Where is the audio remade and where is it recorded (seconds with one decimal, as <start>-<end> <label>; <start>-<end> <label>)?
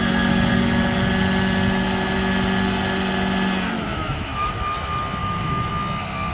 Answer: 0.0-3.9 recorded; 3.9-4.5 remade; 4.5-5.2 recorded; 5.2-5.7 remade; 5.7-6.3 recorded